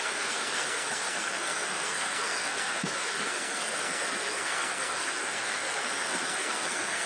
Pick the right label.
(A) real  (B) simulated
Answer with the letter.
B